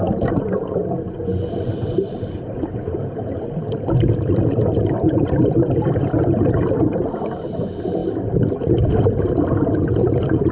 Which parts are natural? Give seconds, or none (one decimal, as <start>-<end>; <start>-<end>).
0.0-10.5